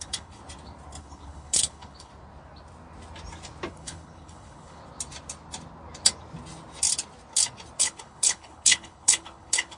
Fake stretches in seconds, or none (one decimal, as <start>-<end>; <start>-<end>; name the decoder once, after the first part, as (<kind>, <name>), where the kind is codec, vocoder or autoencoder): 0.0-0.4 (codec, HILCodec); 1.0-2.1; 3.7-4.8; 7.8-9.8